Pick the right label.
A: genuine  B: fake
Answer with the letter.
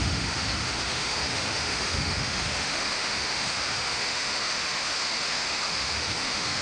B